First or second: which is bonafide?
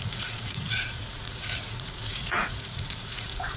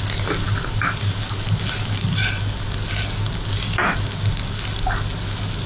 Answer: second